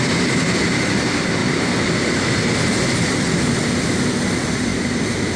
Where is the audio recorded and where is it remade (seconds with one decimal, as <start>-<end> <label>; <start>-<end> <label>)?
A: 0.0-1.4 recorded; 1.4-3.7 remade; 3.7-4.7 recorded; 4.7-5.4 remade